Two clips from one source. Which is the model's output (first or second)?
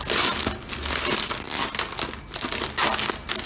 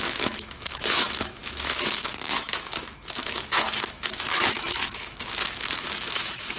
second